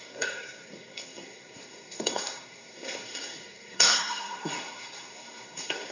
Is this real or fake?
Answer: fake